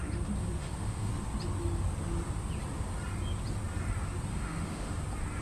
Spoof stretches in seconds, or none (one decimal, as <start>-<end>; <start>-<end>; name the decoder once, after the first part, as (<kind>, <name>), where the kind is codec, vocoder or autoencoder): 0.6-1.1 (autoencoder, DAC-VAE); 4.3-5.0